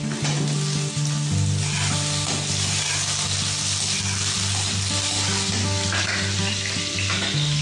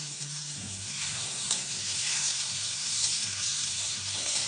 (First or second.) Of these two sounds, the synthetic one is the second